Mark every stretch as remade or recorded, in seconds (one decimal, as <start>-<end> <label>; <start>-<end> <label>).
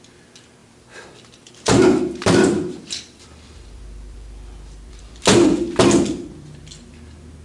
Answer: 0.0-0.6 recorded; 0.6-5.0 remade; 5.0-7.4 recorded